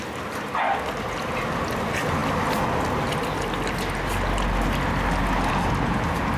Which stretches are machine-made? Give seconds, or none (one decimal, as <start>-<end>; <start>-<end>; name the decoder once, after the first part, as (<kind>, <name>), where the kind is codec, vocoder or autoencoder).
none